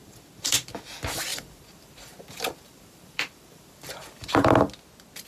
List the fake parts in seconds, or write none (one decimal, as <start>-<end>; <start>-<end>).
0.0-0.7; 1.3-4.5